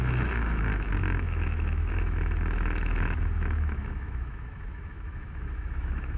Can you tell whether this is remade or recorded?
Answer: remade